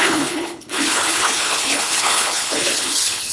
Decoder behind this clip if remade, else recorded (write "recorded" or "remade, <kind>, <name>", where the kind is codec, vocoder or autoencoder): remade, codec, HILCodec